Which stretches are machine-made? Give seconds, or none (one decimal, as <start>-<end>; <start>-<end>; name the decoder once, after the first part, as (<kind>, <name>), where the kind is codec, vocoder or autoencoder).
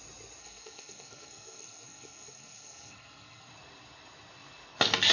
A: 0.4-3.5 (codec, SNAC)